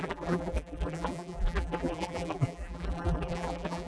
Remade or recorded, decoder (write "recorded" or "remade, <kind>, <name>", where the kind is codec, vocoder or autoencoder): remade, vocoder, BigVGAN v2